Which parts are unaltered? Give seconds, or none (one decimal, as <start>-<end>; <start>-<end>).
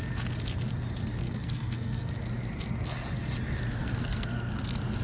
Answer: 0.0-1.2; 2.1-3.8; 4.6-5.0